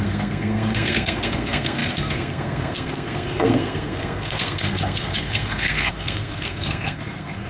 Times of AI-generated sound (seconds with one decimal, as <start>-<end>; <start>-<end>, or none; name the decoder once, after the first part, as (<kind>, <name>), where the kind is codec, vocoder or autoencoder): 0.0-7.5 (codec, SNAC)